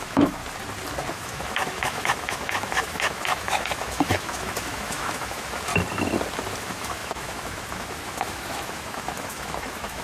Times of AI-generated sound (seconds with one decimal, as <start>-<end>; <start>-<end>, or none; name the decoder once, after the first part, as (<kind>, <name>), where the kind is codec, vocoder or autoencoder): 0.0-0.4 (autoencoder, DAC-VAE); 1.1-5.7; 6.6-10.0